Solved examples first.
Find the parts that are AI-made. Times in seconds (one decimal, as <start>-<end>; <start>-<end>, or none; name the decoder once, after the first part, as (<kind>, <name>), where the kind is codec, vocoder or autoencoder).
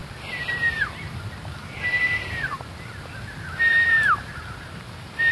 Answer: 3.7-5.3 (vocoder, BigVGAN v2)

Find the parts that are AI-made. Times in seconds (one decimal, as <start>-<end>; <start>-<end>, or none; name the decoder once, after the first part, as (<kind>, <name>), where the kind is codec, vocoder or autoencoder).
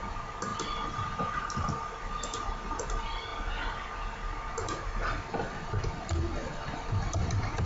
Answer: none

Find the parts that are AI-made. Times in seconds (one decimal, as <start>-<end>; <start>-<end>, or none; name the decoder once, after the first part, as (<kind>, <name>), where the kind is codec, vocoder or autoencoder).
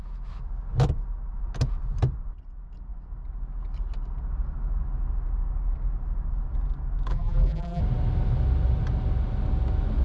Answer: 7.1-7.8 (vocoder, BigVGAN v2)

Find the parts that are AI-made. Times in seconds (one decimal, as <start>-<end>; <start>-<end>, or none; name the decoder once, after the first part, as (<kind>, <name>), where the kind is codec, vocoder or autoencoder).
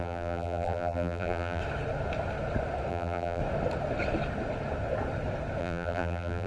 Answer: 0.0-1.6 (vocoder, BigVGAN v2); 2.9-3.4; 5.6-6.5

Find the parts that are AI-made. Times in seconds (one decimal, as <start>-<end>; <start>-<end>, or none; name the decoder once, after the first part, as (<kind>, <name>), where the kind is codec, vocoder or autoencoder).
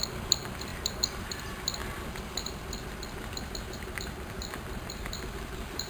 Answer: 0.0-1.8 (vocoder, BigVGAN v2); 3.7-5.9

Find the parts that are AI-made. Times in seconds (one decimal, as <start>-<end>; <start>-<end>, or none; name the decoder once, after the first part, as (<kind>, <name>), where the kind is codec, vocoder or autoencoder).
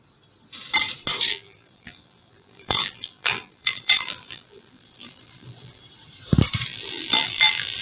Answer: 1.3-5.8 (vocoder, BigVGAN v2); 6.7-7.8